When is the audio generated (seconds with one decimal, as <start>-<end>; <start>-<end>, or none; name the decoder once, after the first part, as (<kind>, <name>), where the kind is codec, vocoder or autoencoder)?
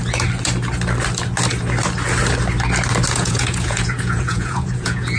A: 3.1-5.2 (vocoder, Vocos)